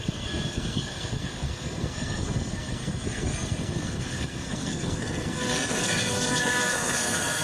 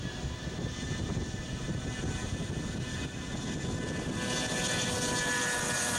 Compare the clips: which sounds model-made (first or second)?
first